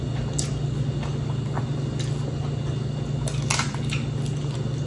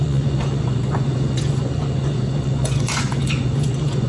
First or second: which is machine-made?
second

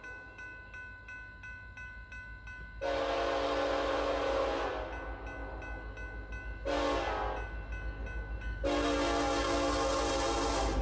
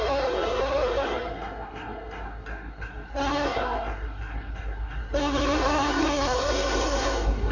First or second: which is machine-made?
second